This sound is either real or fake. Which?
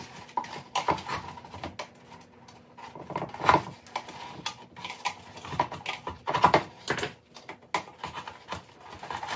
real